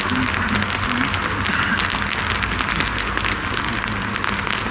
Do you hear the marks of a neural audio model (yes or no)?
no